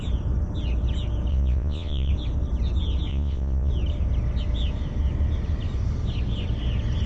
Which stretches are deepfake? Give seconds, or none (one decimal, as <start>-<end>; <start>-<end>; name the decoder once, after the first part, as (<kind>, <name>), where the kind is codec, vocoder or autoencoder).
1.3-2.1 (vocoder, Vocos); 3.1-3.7